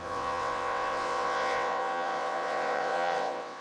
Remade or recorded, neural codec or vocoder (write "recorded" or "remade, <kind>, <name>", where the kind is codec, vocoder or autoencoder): remade, vocoder, WaveNeXt